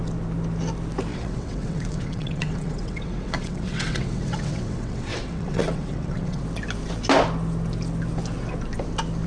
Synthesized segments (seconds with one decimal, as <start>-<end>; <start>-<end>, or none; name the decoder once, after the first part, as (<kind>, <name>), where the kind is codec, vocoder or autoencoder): 1.1-6.4 (vocoder, WaveNeXt)